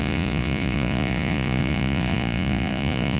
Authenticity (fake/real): fake